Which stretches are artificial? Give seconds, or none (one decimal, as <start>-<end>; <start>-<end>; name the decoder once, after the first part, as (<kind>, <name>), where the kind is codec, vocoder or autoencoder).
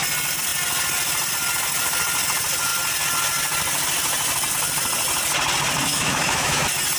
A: 5.9-6.6 (autoencoder, DAC-VAE)